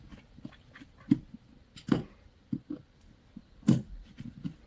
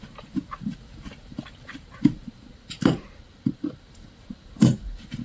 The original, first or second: first